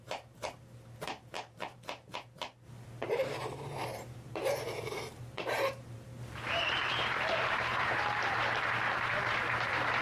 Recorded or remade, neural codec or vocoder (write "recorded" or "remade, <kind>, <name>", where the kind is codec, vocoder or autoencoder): remade, vocoder, BigVGAN v2